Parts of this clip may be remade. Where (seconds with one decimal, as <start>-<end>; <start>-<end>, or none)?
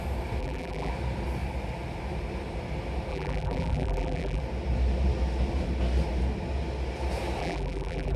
0.4-0.9; 3.1-4.4; 7.4-8.2